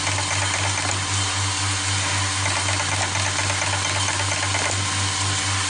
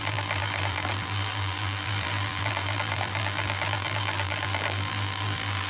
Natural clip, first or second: first